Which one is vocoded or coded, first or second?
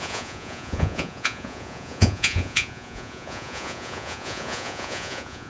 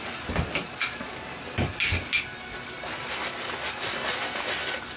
first